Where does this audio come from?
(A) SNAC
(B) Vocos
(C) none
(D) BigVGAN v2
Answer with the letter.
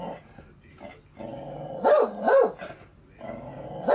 C